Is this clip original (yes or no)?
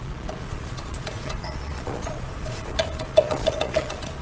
no